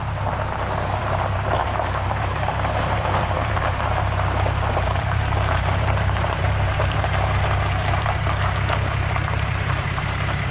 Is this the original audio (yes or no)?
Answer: no